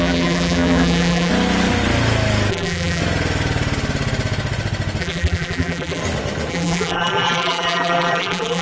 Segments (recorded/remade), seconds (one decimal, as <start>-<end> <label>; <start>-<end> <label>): 0.0-1.3 remade; 1.3-2.5 recorded; 2.5-3.0 remade; 3.0-5.0 recorded; 5.0-6.0 remade; 6.0-6.5 recorded; 6.5-8.6 remade